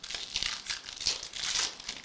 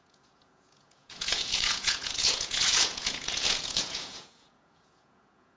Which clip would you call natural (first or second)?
first